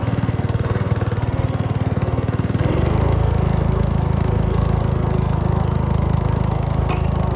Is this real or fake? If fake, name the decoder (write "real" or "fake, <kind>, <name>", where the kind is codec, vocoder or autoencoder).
fake, codec, SNAC